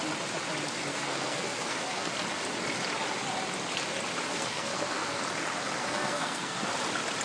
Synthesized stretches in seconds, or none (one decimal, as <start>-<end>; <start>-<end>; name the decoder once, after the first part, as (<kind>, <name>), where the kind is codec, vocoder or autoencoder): 0.9-2.1 (codec, SNAC); 4.3-5.2; 5.8-6.7